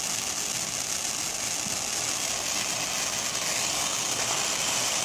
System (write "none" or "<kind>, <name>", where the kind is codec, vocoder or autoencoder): none